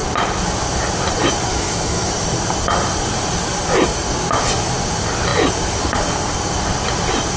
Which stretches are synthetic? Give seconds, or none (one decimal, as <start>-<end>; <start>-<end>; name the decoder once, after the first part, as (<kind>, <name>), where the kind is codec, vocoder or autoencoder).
1.5-2.1 (autoencoder, DAC-VAE)